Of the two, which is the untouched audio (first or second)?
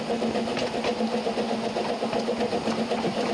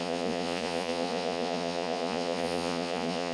first